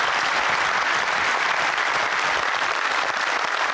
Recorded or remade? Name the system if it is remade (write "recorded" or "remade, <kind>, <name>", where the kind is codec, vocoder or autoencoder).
recorded